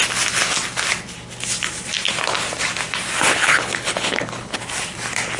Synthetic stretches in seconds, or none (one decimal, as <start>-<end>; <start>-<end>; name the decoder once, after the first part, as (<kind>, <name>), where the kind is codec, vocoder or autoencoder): 3.3-4.6 (codec, HILCodec)